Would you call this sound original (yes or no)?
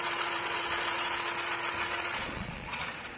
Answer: no